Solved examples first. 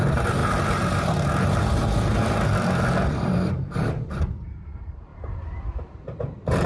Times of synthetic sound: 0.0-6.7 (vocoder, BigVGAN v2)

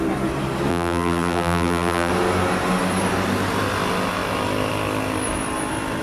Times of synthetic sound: 0.7-2.1 (vocoder, BigVGAN v2)

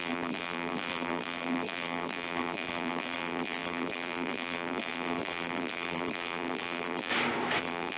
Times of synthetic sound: 0.0-7.1 (vocoder, BigVGAN v2); 7.6-8.0